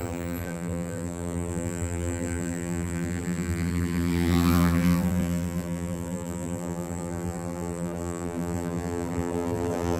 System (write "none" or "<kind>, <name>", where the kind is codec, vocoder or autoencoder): vocoder, BigVGAN v2